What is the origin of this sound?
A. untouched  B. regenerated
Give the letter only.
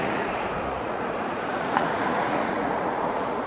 B